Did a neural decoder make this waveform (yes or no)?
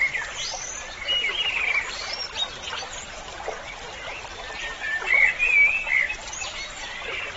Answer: no